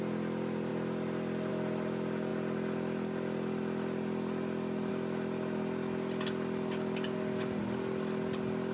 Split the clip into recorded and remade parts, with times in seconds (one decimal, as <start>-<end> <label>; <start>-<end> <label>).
0.0-8.7 recorded